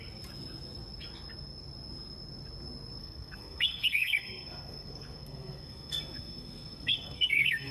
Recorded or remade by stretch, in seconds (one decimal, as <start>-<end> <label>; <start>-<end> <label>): 0.0-3.0 recorded; 3.0-7.7 remade